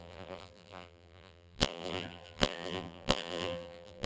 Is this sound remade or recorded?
remade